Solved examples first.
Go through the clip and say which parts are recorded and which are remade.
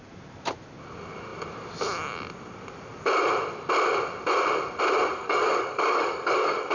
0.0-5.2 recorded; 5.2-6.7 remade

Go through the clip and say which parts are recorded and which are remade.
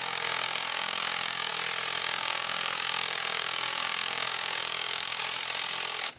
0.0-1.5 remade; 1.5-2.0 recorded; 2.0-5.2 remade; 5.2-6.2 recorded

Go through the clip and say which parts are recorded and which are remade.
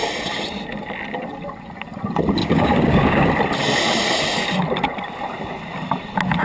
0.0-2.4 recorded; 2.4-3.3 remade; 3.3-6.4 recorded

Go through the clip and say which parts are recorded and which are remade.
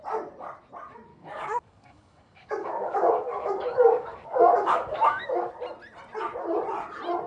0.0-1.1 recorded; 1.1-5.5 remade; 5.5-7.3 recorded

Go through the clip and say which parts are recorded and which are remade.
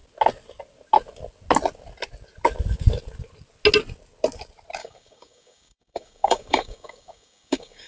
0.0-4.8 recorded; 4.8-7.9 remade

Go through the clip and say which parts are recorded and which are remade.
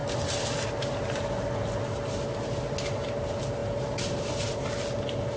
0.0-5.4 recorded